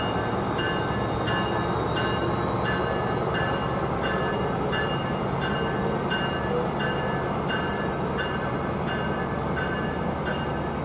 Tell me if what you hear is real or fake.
real